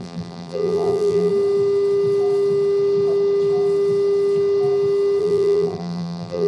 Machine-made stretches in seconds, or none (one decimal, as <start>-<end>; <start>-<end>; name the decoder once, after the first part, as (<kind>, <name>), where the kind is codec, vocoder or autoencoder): 0.0-1.3 (vocoder, BigVGAN v2); 5.2-6.5